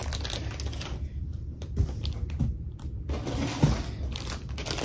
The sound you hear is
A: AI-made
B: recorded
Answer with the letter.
B